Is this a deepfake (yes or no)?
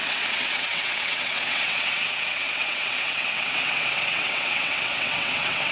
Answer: yes